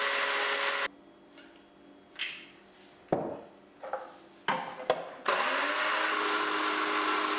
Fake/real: real